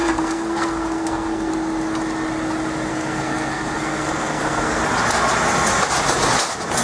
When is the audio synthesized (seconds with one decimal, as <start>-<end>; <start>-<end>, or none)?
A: 0.0-1.5; 2.9-4.8

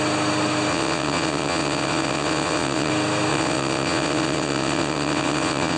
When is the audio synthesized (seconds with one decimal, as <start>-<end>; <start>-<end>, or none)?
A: 0.7-2.9; 3.3-5.8